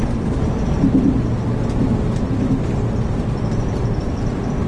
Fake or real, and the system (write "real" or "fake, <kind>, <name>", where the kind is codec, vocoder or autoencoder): real